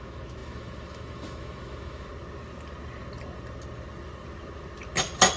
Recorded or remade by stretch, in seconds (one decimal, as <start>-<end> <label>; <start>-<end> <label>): 0.0-2.1 remade; 2.1-5.4 recorded